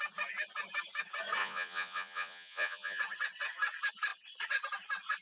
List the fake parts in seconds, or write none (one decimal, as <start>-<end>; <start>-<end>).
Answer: 1.4-3.0

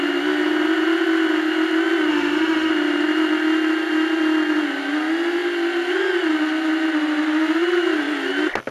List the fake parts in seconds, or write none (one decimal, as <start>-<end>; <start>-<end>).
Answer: 2.1-2.7

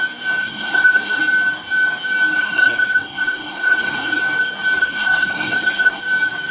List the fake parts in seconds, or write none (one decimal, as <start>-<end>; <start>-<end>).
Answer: 0.4-1.2; 2.4-4.2; 4.8-6.0